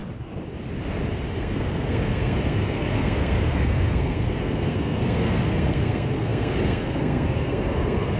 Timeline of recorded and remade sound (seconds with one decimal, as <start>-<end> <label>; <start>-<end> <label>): 0.0-1.4 recorded; 1.4-8.2 remade